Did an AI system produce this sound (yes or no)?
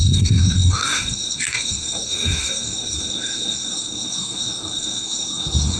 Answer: yes